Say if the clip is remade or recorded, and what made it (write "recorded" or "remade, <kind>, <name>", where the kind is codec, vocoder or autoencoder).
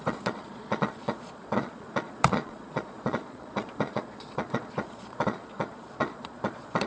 remade, vocoder, Vocos